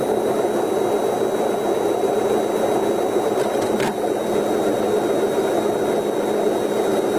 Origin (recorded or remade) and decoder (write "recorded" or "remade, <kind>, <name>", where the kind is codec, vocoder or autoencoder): recorded